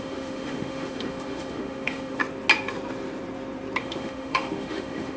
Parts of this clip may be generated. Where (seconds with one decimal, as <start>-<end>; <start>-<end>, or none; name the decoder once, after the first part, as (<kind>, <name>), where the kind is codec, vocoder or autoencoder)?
0.0-2.2 (autoencoder, DAC-VAE); 3.8-5.2